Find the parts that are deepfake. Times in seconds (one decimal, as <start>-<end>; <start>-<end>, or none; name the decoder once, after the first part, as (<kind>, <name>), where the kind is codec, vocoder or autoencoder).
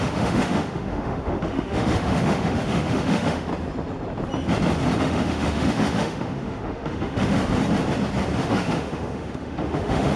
0.0-3.5 (autoencoder, DAC-VAE); 5.0-7.4; 8.4-10.2